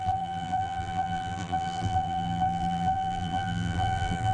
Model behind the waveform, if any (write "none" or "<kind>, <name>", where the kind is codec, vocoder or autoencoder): vocoder, BigVGAN v2